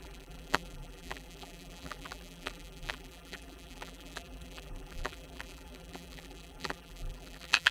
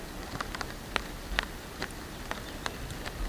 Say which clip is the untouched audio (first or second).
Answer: second